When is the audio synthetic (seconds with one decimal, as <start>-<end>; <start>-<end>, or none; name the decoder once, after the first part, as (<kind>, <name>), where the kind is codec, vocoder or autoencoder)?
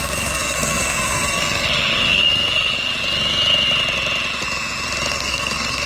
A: 0.0-2.9 (codec, SNAC); 5.1-5.9